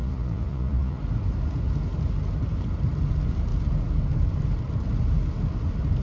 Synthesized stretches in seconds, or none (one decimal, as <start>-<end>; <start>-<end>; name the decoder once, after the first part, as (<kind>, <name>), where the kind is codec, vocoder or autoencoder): 0.0-1.0 (vocoder, Vocos)